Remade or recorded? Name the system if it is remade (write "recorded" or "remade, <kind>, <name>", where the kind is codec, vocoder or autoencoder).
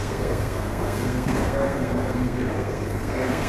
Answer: remade, codec, SNAC